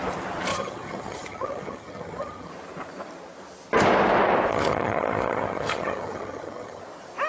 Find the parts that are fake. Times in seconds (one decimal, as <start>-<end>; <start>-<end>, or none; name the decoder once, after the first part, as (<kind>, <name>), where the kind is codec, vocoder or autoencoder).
0.5-2.5 (vocoder, HiFi-GAN); 4.5-6.8